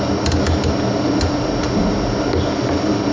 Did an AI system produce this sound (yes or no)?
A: no